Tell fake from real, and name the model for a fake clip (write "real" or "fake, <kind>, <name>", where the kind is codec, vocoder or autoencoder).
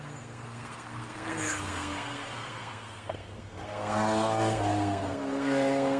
fake, codec, SNAC